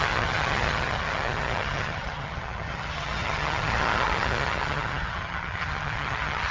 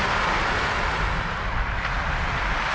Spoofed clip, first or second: first